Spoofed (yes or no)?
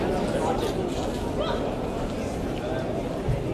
no